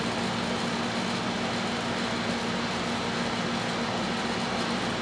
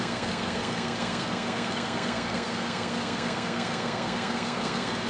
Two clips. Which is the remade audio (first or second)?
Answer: second